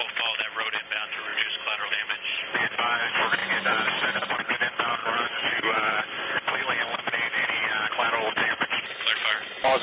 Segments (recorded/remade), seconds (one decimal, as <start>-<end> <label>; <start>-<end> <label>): 0.0-5.0 recorded; 5.0-6.2 remade; 6.2-9.8 recorded